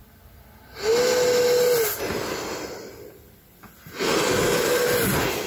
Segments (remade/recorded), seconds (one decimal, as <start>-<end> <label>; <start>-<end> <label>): 0.0-5.5 recorded